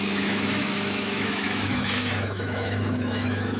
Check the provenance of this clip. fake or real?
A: fake